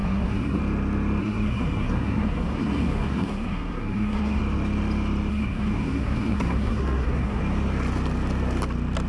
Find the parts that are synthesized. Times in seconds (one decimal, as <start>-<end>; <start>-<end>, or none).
0.0-0.6; 1.2-4.4; 5.3-7.4